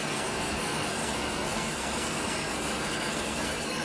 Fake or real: fake